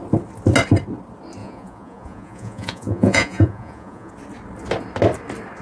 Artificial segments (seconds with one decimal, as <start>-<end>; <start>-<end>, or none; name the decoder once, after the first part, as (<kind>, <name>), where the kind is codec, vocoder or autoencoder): 1.4-4.1 (vocoder, Vocos)

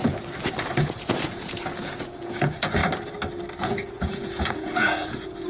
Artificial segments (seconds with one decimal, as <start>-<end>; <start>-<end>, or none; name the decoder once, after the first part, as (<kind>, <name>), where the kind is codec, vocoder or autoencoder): 0.6-2.8 (vocoder, Vocos); 3.6-5.5

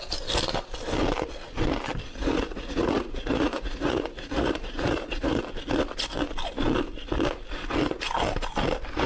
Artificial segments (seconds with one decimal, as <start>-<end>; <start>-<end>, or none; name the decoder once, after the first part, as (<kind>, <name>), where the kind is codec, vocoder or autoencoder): 2.2-5.4 (vocoder, Vocos)

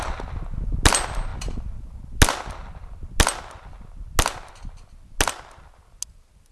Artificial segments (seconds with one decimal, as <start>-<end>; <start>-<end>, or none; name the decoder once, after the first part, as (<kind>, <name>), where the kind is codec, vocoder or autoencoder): none

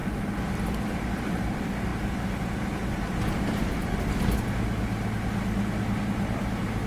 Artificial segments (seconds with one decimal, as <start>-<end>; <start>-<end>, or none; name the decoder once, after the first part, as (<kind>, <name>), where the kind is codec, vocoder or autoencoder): none